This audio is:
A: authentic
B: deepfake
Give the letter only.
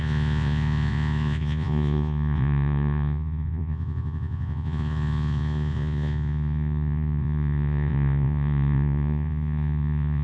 B